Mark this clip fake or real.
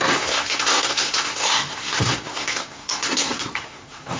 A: fake